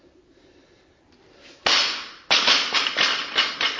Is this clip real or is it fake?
real